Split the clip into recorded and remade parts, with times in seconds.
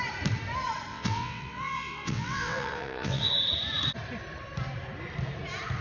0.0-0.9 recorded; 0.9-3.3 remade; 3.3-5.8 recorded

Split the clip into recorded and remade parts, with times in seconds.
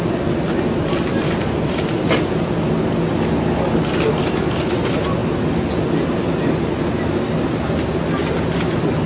0.0-9.1 recorded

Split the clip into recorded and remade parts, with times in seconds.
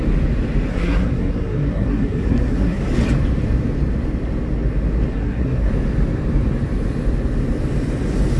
0.0-0.7 recorded; 0.7-2.8 remade; 2.8-5.1 recorded; 5.1-5.7 remade; 5.7-8.4 recorded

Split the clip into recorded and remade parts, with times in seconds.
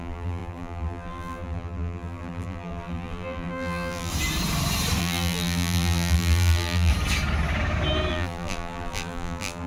0.0-4.1 remade; 4.1-5.0 recorded; 5.0-6.9 remade; 6.9-8.1 recorded; 8.1-9.7 remade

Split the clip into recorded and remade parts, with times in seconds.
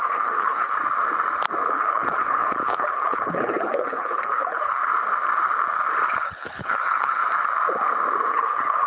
0.0-0.8 remade; 0.8-1.7 recorded; 1.7-4.9 remade; 4.9-6.1 recorded; 6.1-7.2 remade; 7.2-8.3 recorded; 8.3-8.9 remade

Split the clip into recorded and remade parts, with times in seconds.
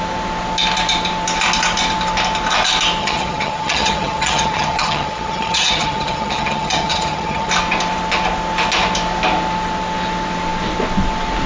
0.0-3.0 recorded; 3.0-7.5 remade; 7.5-11.5 recorded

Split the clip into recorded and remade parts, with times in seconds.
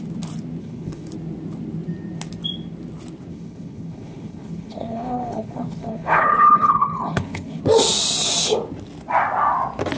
0.0-0.6 recorded; 0.6-1.1 remade; 1.1-3.3 recorded; 3.3-7.6 remade; 7.6-10.0 recorded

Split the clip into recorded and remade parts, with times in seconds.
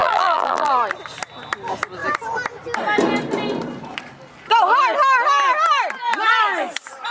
0.0-0.7 remade; 0.7-7.1 recorded